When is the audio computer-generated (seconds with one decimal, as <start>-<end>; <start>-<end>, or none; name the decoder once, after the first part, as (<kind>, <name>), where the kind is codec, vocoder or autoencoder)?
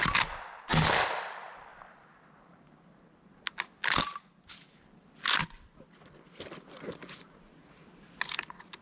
none